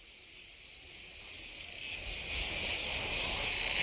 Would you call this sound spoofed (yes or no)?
no